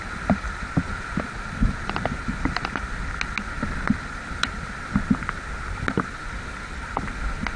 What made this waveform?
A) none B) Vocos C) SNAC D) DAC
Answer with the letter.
A